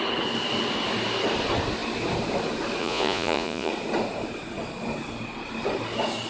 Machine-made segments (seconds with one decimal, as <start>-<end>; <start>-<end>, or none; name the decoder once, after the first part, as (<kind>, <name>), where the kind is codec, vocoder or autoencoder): 2.8-3.7 (vocoder, Vocos)